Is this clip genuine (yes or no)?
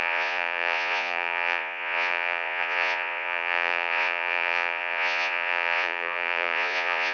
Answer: no